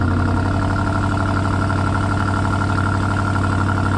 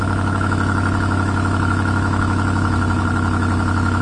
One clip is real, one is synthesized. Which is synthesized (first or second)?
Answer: second